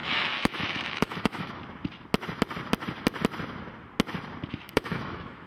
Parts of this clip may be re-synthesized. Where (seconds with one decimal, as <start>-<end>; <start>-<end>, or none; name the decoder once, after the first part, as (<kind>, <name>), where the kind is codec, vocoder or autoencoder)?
0.0-1.6 (autoencoder, DAC-VAE); 4.5-5.5